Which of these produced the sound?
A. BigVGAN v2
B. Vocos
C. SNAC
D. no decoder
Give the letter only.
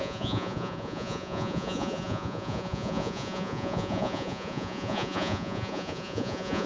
B